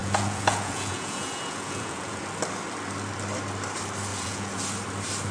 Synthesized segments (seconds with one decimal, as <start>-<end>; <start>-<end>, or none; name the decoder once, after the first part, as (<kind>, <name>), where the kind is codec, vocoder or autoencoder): 0.0-2.2 (vocoder, Vocos); 4.1-4.6